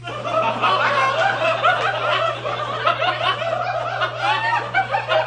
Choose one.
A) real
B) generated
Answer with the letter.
A